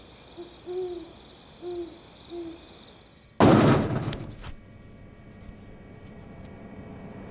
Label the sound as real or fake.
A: real